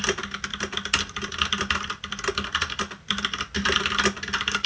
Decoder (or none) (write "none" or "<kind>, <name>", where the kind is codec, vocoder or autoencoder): none